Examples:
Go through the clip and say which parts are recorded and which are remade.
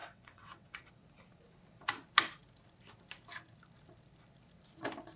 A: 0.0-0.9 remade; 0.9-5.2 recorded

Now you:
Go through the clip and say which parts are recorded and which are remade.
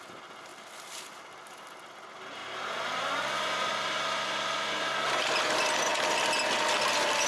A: 0.0-7.3 recorded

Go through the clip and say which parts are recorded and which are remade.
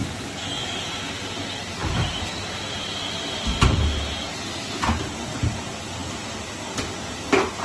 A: 0.0-0.8 remade; 0.8-7.6 recorded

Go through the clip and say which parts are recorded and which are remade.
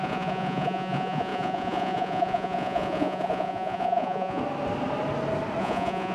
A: 0.0-4.4 remade; 4.4-5.6 recorded; 5.6-6.1 remade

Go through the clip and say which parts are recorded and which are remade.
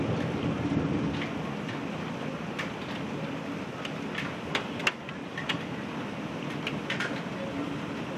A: 0.0-8.2 recorded